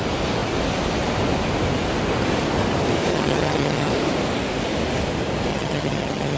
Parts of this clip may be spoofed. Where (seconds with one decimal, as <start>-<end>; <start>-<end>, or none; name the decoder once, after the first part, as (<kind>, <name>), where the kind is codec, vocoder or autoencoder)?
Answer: 3.1-3.9 (vocoder, HiFi-GAN); 5.5-6.4

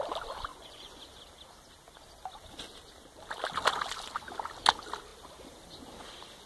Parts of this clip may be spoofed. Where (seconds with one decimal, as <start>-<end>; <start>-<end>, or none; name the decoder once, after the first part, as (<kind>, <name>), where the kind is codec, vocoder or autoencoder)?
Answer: 0.5-1.0 (vocoder, Vocos)

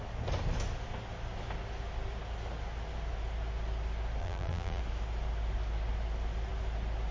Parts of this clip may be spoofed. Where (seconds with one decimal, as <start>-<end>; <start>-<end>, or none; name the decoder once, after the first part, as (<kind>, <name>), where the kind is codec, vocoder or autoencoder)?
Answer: 4.2-4.8 (vocoder, BigVGAN v2)

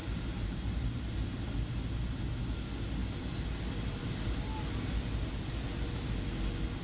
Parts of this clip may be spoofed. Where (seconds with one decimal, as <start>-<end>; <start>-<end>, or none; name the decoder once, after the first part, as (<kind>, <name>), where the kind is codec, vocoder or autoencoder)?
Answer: 0.0-1.5 (vocoder, BigVGAN v2)

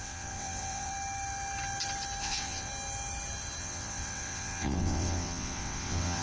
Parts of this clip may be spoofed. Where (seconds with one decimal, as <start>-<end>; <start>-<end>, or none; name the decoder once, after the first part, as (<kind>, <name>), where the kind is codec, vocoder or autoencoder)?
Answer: 0.0-0.9 (vocoder, WaveNeXt); 2.2-2.7; 3.6-6.2

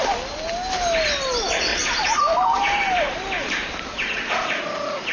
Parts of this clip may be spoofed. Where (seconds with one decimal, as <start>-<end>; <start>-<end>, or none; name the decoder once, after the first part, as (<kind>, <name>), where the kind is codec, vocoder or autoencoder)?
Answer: 1.7-4.6 (vocoder, BigVGAN v2)

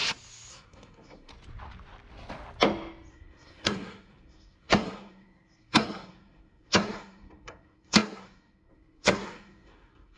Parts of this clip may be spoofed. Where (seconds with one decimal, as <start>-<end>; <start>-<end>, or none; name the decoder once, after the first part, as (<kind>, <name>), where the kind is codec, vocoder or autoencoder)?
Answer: 0.5-1.3 (codec, SNAC); 3.1-10.2

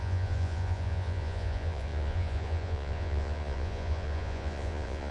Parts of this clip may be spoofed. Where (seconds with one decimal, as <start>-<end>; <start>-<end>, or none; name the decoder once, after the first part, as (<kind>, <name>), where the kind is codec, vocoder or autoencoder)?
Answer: 0.0-5.1 (vocoder, Vocos)